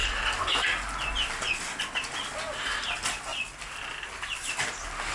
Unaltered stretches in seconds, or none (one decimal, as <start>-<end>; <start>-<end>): 0.0-5.1